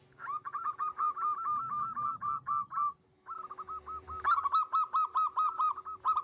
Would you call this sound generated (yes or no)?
no